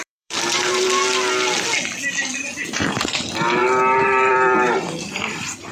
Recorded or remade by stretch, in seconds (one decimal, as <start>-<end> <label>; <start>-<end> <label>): 0.0-1.0 remade; 1.0-3.0 recorded; 3.0-3.6 remade; 3.6-4.3 recorded; 4.3-5.7 remade